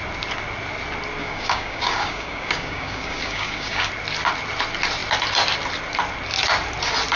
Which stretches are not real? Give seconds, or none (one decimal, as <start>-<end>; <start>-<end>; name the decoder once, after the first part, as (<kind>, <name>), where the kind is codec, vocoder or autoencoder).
1.2-3.9 (codec, DAC)